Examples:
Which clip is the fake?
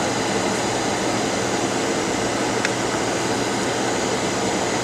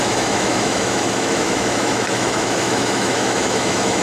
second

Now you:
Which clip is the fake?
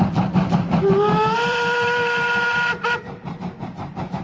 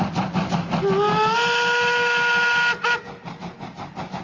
first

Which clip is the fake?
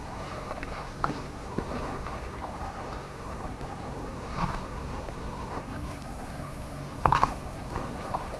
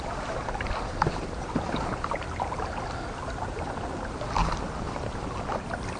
first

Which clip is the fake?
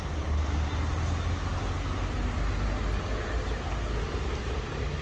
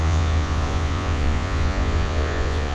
second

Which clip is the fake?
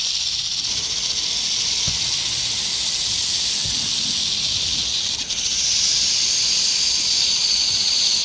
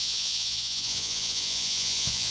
second